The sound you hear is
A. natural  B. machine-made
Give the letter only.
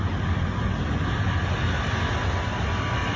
A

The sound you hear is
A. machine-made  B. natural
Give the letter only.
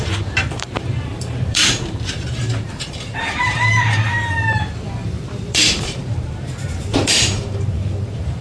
A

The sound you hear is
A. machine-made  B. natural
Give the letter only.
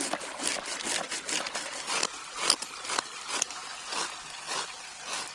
B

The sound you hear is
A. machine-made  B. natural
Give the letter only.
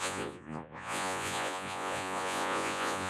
A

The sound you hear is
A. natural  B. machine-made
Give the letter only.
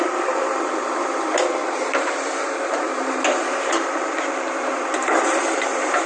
B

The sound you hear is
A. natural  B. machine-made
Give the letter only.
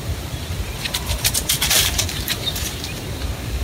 B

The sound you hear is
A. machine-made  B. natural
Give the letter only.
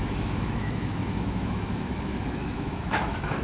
A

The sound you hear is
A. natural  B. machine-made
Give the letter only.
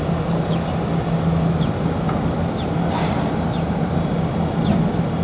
A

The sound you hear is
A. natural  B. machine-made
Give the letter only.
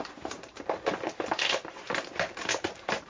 B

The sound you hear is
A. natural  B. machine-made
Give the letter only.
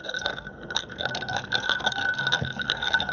B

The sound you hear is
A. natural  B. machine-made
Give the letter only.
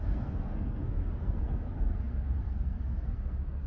B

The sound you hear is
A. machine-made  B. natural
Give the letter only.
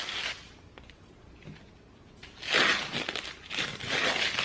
B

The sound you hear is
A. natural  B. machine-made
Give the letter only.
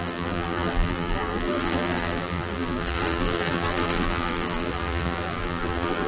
B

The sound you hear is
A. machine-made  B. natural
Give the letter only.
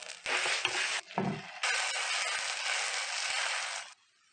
B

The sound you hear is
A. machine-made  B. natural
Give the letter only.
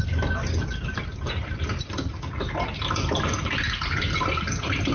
B